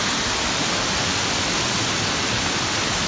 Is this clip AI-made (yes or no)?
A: no